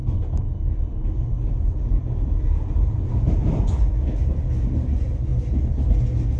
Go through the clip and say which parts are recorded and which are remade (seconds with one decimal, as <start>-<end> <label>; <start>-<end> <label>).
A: 0.0-3.8 remade; 3.8-6.4 recorded